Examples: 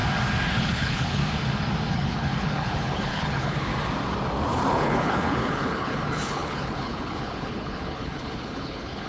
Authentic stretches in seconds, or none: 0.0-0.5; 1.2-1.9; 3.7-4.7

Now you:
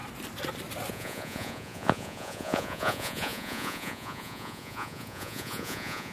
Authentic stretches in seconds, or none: 0.0-0.9

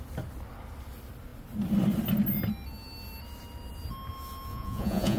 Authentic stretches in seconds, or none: 0.0-4.5

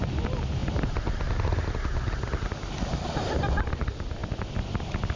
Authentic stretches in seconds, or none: 0.0-4.2

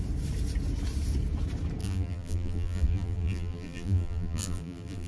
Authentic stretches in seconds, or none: 0.0-1.8